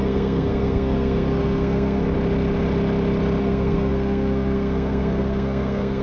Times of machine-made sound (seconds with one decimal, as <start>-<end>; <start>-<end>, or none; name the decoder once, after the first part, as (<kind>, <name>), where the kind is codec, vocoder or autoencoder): 0.0-2.0 (codec, SNAC); 3.4-6.0